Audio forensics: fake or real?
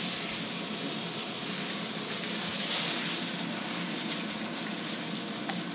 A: real